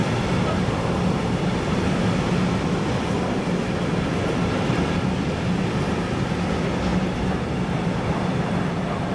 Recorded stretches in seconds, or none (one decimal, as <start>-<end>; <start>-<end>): 1.4-6.9; 7.5-9.1